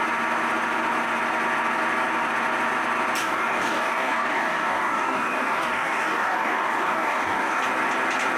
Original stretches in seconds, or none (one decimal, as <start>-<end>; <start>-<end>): 0.0-3.2; 7.6-8.4